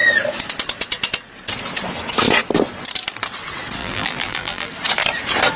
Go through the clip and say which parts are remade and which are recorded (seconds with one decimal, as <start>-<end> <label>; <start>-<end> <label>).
0.0-3.8 recorded; 3.8-4.7 remade; 4.7-5.6 recorded